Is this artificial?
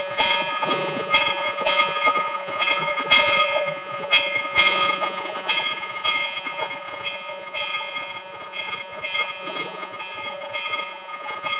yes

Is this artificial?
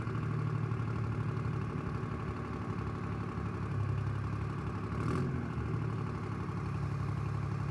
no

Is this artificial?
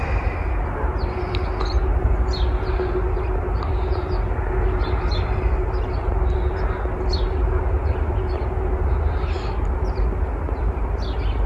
no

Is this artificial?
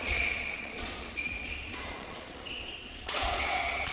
yes